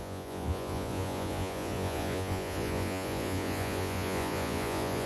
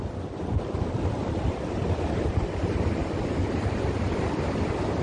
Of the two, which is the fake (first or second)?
first